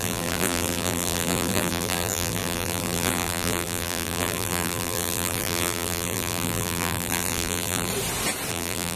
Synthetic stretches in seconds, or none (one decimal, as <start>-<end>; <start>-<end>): 0.0-7.9; 8.5-9.0